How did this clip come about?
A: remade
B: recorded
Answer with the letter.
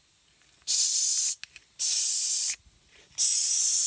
B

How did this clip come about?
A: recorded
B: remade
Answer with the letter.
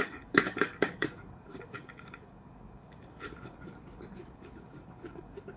B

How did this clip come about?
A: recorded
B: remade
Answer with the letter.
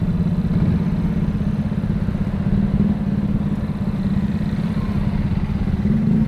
A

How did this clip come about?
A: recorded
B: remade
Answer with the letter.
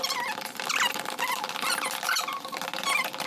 A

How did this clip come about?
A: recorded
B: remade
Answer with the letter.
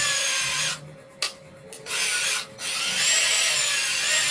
A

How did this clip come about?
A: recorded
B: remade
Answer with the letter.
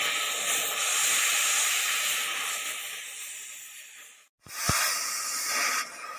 A